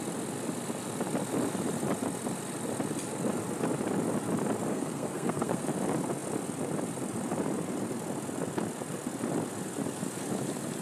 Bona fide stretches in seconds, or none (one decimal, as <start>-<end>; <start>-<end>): 0.0-4.7; 5.6-10.8